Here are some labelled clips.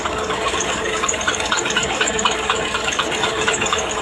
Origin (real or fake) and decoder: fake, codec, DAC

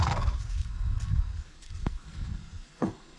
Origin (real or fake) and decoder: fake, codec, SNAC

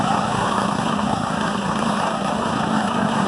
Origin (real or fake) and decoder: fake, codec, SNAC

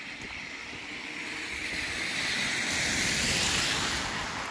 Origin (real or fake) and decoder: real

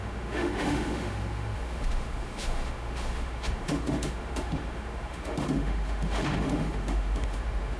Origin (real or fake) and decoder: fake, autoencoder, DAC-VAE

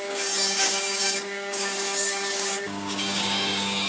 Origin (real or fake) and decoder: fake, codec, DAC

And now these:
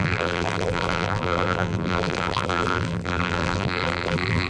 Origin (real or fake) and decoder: fake, vocoder, BigVGAN v2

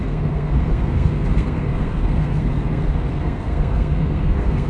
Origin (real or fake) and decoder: fake, codec, SNAC